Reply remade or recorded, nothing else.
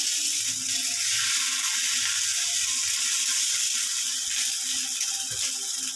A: recorded